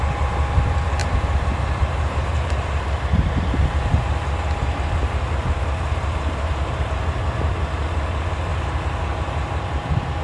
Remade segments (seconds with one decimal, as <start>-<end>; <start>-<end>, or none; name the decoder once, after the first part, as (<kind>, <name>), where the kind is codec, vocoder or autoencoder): 1.0-4.1 (vocoder, BigVGAN v2); 8.5-9.2

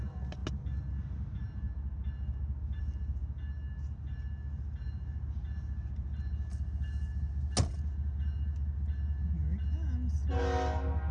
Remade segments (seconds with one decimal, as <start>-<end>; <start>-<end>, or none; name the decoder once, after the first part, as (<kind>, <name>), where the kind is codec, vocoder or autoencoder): none

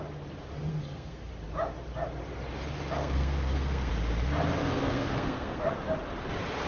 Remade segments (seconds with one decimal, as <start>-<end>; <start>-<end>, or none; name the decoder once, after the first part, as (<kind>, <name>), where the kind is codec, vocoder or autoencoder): 0.7-1.3 (codec, SNAC); 3.0-3.9; 4.6-5.7

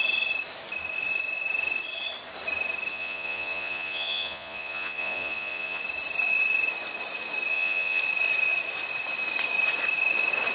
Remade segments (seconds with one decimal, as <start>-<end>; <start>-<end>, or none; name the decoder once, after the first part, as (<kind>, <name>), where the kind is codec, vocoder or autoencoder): 2.9-5.8 (vocoder, Vocos); 7.5-8.0

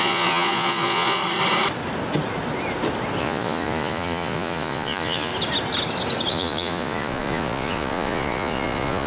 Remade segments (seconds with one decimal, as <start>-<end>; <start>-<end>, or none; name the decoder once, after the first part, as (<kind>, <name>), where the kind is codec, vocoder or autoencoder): 0.0-1.2 (vocoder, Vocos); 3.2-5.3; 6.3-9.1

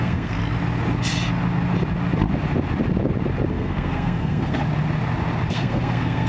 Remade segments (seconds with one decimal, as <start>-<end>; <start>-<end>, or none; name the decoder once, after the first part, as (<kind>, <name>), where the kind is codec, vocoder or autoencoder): 0.0-0.4 (codec, SNAC); 3.5-4.6; 5.5-6.3

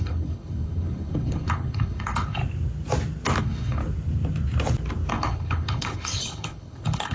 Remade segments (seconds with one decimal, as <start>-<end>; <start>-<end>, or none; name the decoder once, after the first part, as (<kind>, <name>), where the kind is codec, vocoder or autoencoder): 0.0-2.4 (codec, HILCodec); 3.4-3.8; 5.1-7.1

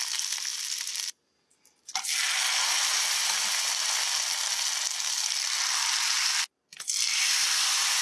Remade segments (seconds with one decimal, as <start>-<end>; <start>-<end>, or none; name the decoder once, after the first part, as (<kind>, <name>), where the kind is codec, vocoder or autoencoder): none